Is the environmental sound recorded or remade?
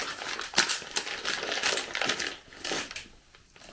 recorded